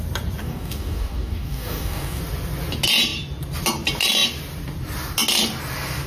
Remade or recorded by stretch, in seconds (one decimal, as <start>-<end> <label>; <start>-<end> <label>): 0.0-0.4 recorded; 0.4-2.2 remade; 2.2-6.1 recorded